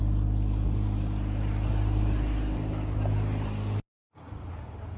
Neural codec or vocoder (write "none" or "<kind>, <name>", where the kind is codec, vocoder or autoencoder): none